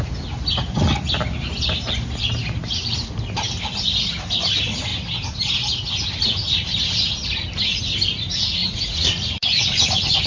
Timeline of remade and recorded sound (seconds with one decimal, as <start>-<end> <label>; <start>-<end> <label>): 0.0-8.6 recorded; 8.6-10.3 remade

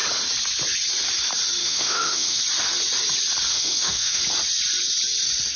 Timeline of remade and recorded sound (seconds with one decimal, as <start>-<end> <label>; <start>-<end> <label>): 0.0-1.6 recorded; 1.6-2.4 remade; 2.4-3.5 recorded; 3.5-4.2 remade; 4.2-5.6 recorded

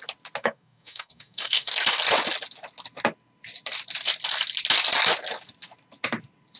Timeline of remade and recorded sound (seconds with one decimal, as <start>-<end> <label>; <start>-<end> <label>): 0.0-0.4 recorded; 0.4-1.7 remade; 1.7-6.6 recorded

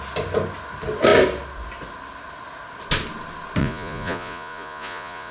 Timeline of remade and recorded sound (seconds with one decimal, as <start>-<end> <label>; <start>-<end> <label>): 0.0-3.6 recorded; 3.6-5.3 remade

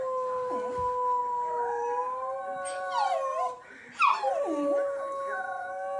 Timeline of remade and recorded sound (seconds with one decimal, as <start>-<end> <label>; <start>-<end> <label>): 0.0-6.0 recorded